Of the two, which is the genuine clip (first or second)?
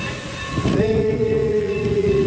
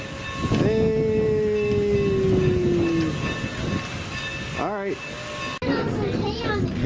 second